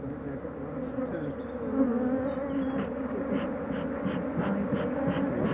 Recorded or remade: recorded